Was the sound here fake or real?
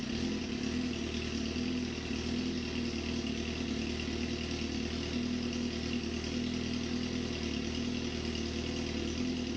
real